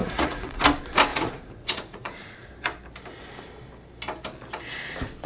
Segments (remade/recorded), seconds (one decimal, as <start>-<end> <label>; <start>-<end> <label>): 0.0-0.6 remade; 0.6-1.1 recorded; 1.1-2.5 remade; 2.5-5.3 recorded